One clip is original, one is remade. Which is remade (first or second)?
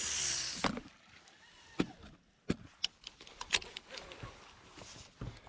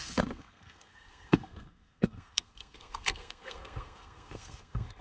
second